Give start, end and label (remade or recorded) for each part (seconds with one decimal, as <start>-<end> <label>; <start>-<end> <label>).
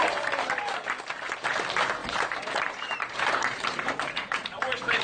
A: 0.0-2.0 recorded; 2.0-4.6 remade; 4.6-5.0 recorded